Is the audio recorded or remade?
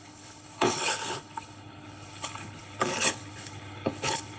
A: remade